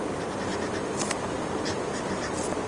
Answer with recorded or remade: recorded